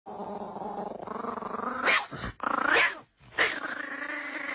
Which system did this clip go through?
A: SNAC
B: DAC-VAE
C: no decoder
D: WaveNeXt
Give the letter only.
C